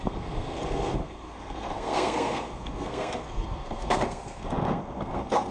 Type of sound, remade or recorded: remade